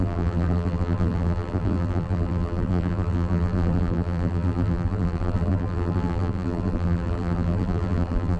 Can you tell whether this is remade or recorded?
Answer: remade